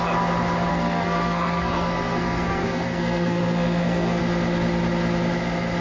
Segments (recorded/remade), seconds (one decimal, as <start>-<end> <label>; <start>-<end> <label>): 0.0-0.7 recorded; 0.7-4.2 remade; 4.2-5.8 recorded